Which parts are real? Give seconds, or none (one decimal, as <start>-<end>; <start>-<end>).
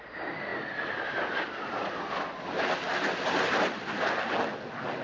0.0-5.0